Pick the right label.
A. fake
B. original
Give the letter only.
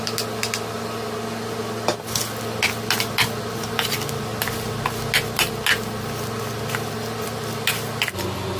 B